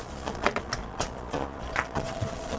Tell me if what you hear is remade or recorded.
remade